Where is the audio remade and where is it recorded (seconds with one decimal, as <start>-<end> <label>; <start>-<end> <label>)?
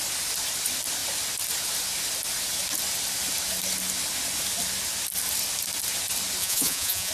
0.0-6.4 recorded; 6.4-7.1 remade